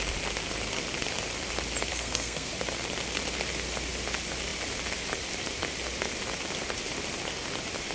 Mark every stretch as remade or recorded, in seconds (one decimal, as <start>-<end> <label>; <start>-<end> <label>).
0.0-1.9 recorded; 1.9-2.5 remade; 2.5-7.9 recorded